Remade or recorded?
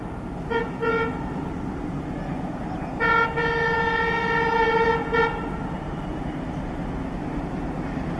recorded